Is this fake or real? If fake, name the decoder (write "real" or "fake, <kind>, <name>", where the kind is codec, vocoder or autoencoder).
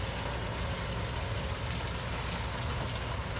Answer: real